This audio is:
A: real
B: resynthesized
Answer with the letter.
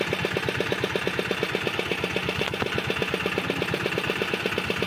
A